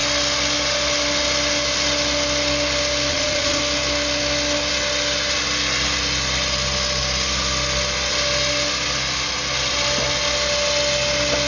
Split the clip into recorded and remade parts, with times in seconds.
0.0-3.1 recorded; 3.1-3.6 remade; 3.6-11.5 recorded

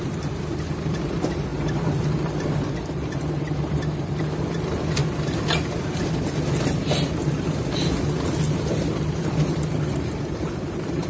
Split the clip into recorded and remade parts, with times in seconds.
0.0-5.0 remade; 5.0-8.8 recorded; 8.8-11.1 remade

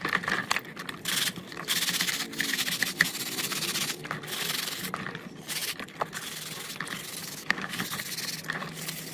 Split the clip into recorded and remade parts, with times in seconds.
0.0-7.2 recorded; 7.2-7.8 remade; 7.8-9.1 recorded

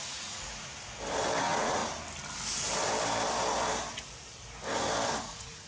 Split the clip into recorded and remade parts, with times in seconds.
0.0-0.7 remade; 0.7-1.4 recorded; 1.4-1.8 remade; 1.8-5.2 recorded; 5.2-5.7 remade

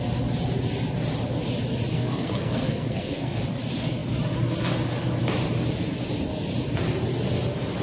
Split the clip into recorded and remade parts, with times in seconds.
0.0-1.9 recorded; 1.9-3.4 remade; 3.4-7.8 recorded

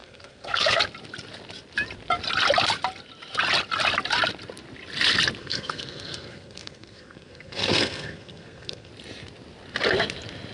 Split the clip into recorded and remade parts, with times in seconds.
0.0-0.8 remade; 0.8-5.4 recorded; 5.4-8.9 remade; 8.9-10.5 recorded

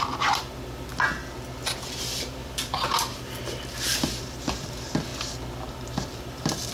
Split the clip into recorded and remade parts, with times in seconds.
0.0-0.9 remade; 0.9-2.0 recorded; 2.0-5.1 remade; 5.1-5.7 recorded; 5.7-6.7 remade

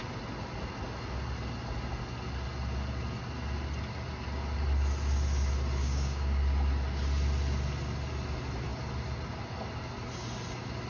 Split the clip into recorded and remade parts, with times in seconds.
0.0-5.8 recorded; 5.8-6.4 remade; 6.4-10.9 recorded